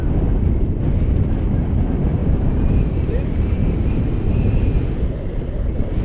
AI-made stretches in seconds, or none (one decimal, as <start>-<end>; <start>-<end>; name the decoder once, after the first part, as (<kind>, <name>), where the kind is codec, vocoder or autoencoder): 2.2-4.7 (vocoder, BigVGAN v2)